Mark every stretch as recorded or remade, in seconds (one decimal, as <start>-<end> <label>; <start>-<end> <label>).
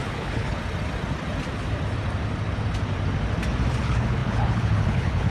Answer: 0.0-0.6 remade; 0.6-3.8 recorded; 3.8-5.3 remade